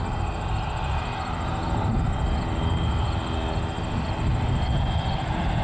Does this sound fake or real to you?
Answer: real